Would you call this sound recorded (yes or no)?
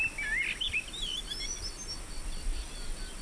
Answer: yes